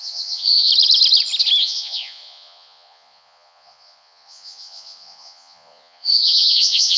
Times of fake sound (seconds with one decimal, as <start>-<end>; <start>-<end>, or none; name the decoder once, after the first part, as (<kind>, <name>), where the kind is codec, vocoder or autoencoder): 0.0-0.7 (vocoder, Vocos); 1.6-7.0